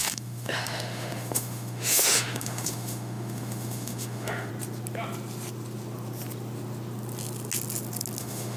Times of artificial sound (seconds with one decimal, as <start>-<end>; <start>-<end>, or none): 0.0-4.5; 8.2-8.6